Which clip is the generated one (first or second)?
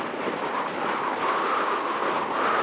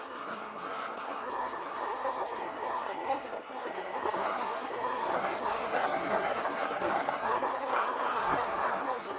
second